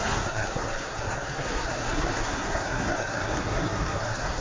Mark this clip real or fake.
fake